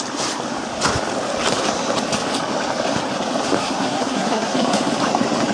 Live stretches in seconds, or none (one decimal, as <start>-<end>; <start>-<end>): 0.0-3.6; 4.9-5.5